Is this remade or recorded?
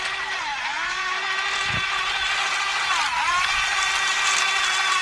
recorded